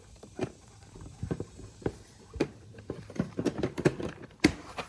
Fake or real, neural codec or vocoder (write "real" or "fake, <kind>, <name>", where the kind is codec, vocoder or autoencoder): fake, vocoder, BigVGAN v2